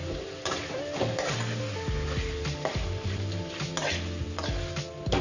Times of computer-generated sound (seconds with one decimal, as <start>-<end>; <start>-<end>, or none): none